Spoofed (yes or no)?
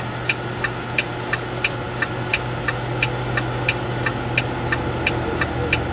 no